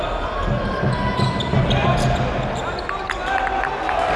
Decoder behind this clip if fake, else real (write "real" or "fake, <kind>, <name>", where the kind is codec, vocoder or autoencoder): real